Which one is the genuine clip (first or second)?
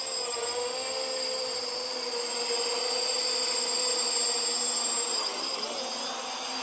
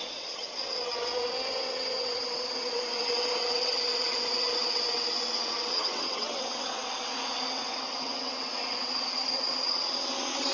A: first